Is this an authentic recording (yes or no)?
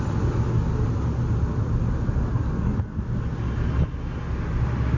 yes